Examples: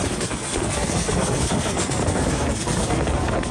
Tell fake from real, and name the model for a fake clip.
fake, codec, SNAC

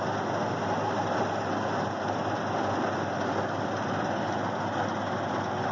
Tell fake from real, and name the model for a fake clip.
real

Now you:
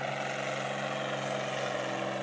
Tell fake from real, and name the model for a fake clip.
real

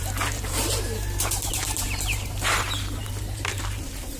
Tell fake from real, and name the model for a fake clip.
fake, vocoder, BigVGAN v2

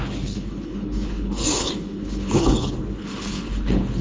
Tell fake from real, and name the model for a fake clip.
fake, codec, HILCodec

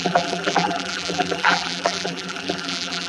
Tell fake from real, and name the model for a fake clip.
fake, vocoder, BigVGAN v2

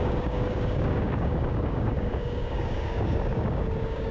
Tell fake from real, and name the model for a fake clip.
fake, codec, DAC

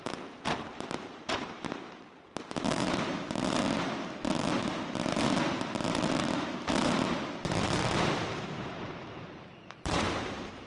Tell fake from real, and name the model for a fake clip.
fake, vocoder, BigVGAN v2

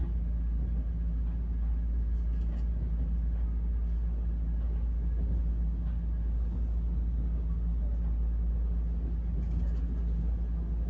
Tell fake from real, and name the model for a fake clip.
real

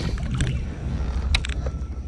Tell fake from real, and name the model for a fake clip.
real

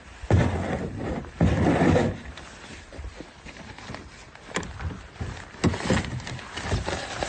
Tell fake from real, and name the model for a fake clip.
real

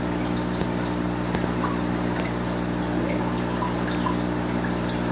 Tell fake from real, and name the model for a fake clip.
real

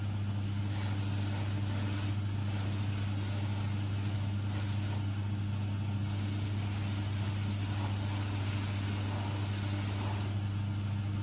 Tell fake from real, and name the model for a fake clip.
real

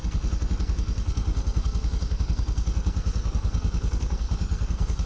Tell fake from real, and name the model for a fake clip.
fake, codec, SNAC